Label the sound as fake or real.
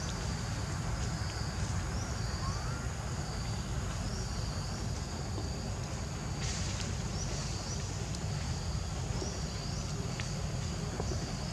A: real